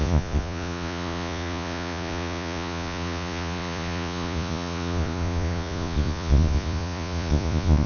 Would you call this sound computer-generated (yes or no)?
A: yes